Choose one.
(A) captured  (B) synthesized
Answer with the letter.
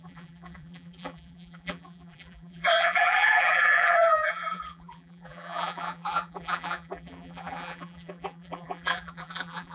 B